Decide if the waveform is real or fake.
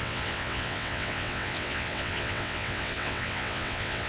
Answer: fake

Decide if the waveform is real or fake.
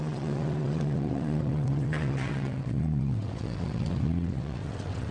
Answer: fake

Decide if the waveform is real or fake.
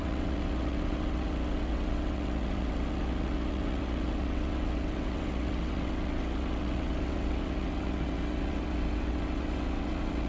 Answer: fake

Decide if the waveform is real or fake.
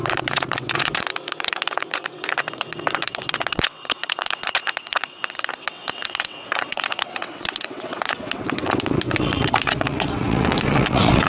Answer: fake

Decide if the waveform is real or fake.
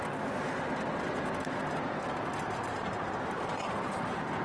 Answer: real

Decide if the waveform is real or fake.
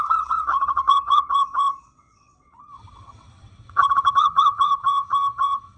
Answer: fake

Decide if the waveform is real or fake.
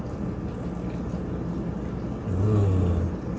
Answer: real